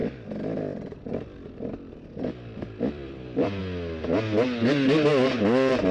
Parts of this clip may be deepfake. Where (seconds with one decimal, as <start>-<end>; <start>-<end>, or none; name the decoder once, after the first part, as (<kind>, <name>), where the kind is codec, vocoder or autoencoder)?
1.2-3.6 (vocoder, BigVGAN v2); 5.1-5.9